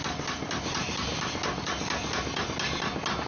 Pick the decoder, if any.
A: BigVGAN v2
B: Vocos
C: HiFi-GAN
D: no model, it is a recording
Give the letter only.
D